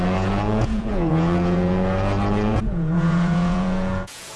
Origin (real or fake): fake